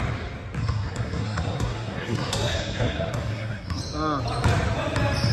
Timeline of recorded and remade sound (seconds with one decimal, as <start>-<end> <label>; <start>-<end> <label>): 0.0-0.6 recorded; 0.6-3.8 remade; 3.8-5.3 recorded